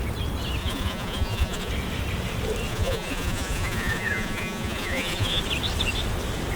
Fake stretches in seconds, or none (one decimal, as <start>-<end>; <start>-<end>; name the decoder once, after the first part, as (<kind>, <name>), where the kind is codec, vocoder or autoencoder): 0.6-1.7 (vocoder, Vocos); 2.7-5.4